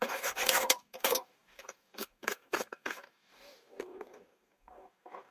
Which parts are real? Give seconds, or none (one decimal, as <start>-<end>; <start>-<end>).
none